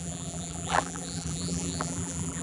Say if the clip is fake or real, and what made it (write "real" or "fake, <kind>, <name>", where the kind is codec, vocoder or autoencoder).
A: fake, vocoder, BigVGAN v2